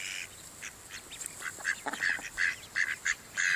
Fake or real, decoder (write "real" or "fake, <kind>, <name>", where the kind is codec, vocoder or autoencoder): real